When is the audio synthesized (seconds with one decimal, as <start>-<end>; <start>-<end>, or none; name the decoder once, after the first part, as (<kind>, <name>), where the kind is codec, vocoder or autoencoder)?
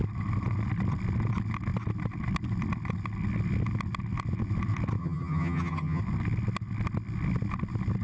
5.0-6.0 (vocoder, HiFi-GAN)